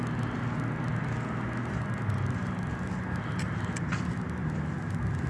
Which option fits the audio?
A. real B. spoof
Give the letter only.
A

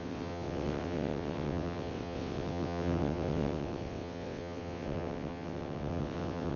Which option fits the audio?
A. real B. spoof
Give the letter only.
B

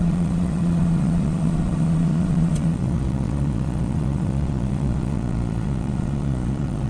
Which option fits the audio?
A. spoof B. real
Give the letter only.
A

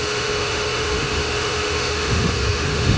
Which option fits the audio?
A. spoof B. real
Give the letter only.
A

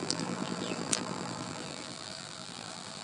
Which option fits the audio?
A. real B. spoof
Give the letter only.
B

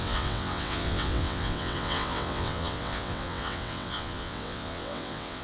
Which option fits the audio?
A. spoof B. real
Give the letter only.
A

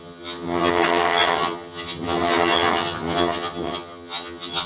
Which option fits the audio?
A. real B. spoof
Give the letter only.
B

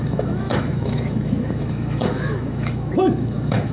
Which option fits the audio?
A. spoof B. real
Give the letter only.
A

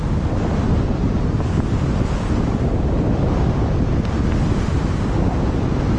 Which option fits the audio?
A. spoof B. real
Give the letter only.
B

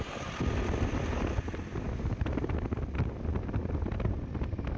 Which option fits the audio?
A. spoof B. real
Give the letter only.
B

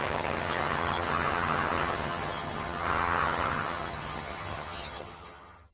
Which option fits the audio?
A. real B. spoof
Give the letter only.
B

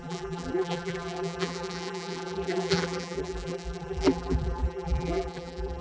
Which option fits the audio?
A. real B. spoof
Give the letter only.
B